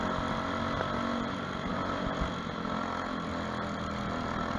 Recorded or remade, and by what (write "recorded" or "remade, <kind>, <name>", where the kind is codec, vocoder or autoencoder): recorded